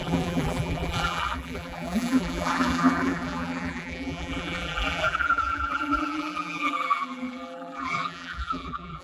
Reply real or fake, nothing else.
fake